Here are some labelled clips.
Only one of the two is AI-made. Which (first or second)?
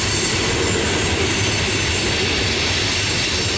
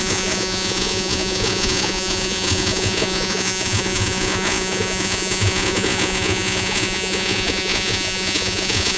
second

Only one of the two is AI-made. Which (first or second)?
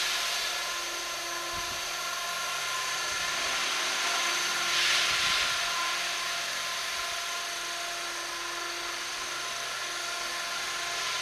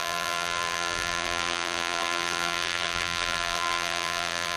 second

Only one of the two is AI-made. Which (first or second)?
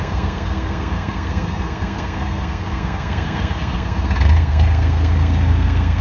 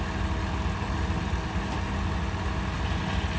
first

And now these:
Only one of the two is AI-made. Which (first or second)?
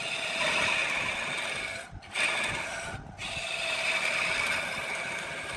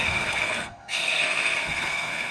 second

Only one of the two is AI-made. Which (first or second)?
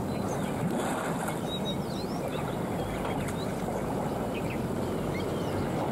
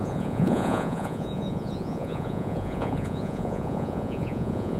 second